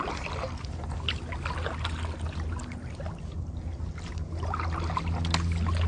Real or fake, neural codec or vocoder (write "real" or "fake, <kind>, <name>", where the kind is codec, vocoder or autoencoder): real